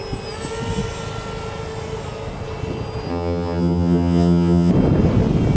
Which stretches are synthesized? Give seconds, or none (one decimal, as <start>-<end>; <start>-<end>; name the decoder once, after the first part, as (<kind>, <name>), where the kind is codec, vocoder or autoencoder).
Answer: 3.1-4.7 (vocoder, HiFi-GAN)